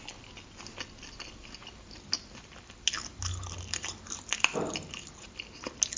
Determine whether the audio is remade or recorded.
recorded